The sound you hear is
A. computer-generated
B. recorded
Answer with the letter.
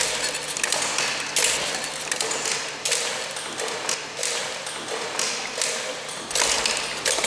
B